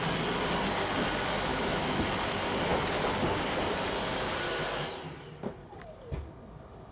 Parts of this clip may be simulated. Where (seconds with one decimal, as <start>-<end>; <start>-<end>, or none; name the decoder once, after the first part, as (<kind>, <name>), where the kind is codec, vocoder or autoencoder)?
1.5-2.1 (autoencoder, DAC-VAE)